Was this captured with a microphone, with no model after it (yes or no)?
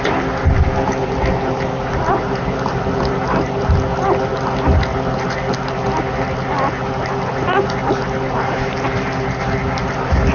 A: yes